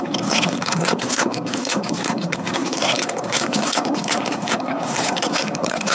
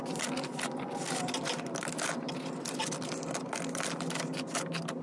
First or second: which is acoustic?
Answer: second